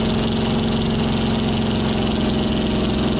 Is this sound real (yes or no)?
yes